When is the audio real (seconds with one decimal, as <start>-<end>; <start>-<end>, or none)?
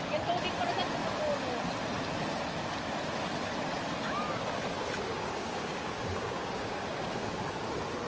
0.0-5.1; 7.4-8.1